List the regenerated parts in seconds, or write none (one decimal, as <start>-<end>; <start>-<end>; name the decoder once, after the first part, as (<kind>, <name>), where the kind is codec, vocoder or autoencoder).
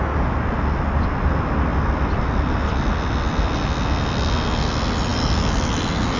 none